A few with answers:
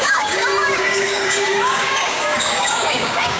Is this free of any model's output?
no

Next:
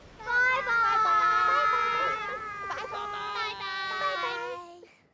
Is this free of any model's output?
yes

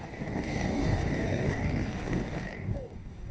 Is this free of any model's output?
no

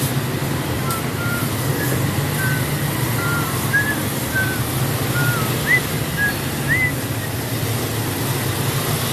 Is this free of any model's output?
yes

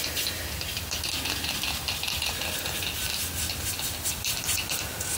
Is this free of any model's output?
yes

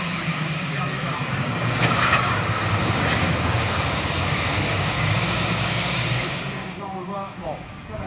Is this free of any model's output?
no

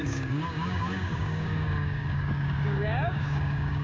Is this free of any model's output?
no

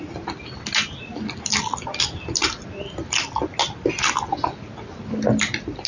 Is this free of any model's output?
yes